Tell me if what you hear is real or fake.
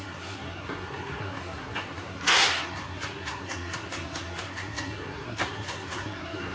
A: fake